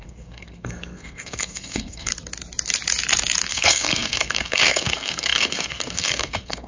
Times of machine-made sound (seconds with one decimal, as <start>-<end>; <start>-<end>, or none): 0.0-2.1; 3.5-6.7